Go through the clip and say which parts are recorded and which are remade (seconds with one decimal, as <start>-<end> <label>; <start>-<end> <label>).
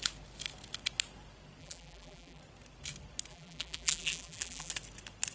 0.0-1.6 recorded; 1.6-2.4 remade; 2.4-3.3 recorded; 3.3-4.7 remade; 4.7-5.3 recorded